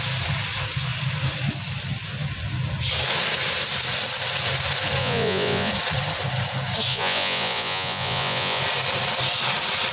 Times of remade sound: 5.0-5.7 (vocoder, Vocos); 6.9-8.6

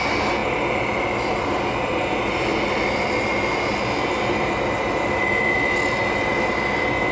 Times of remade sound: none

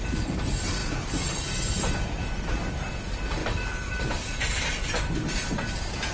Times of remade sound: 0.0-6.1 (vocoder, BigVGAN v2)

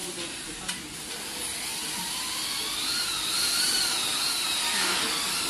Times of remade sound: 0.0-5.5 (vocoder, BigVGAN v2)

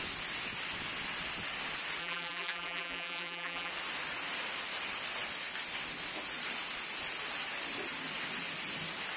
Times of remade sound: 2.0-3.7 (vocoder, BigVGAN v2)

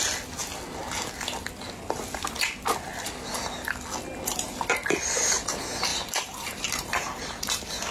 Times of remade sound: 5.9-7.5 (vocoder, BigVGAN v2)

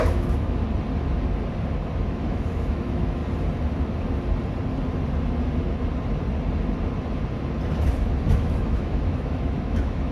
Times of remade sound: 0.0-0.6 (autoencoder, DAC-VAE); 2.1-3.2; 8.3-10.1